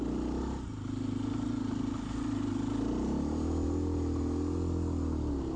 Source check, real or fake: real